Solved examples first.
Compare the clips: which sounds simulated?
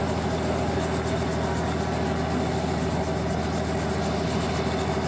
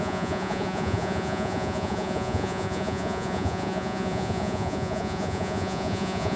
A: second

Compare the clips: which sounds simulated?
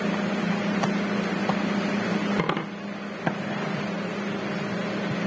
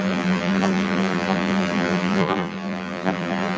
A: second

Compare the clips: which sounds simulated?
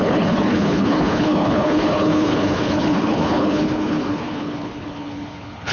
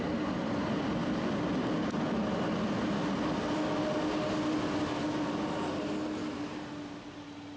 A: first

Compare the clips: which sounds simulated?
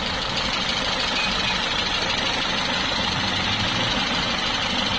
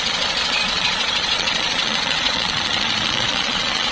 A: second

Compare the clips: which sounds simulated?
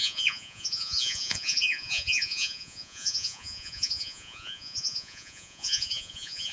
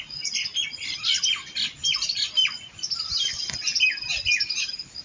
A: first